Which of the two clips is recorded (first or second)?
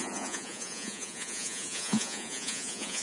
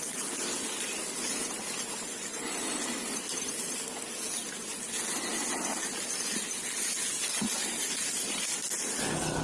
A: second